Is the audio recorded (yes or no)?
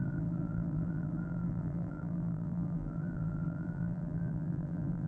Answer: no